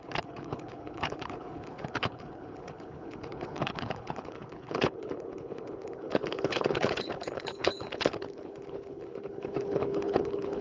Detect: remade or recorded remade